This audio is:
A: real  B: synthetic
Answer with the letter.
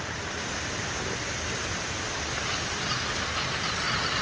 A